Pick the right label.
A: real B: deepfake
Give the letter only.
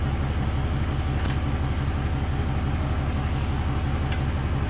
A